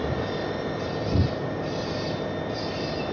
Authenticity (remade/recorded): recorded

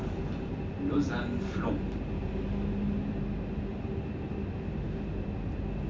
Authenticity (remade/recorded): recorded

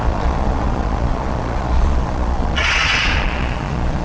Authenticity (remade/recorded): remade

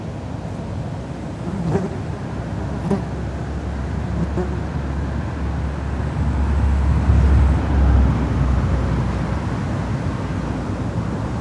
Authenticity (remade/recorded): recorded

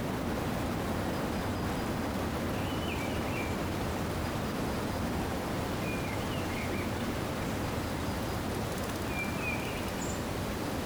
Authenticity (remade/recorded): recorded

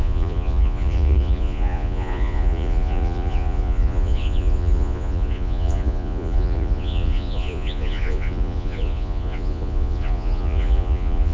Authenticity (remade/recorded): remade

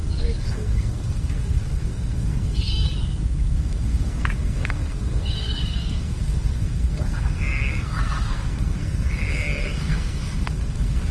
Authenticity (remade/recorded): remade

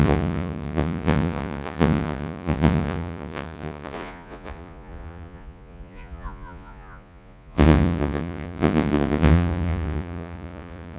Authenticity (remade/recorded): remade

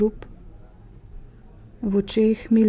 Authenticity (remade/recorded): recorded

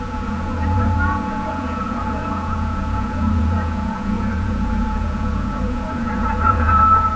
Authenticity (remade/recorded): remade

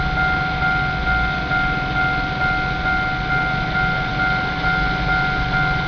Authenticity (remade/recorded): recorded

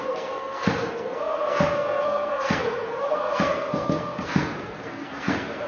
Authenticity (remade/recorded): remade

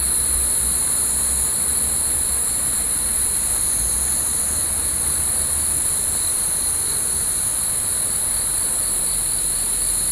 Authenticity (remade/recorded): recorded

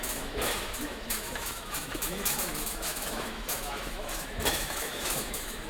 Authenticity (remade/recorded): remade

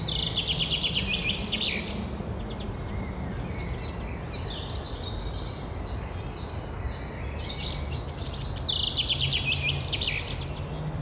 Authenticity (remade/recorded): recorded